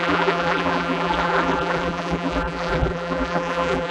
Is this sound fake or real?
fake